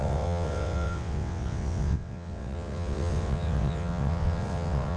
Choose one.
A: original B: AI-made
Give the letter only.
B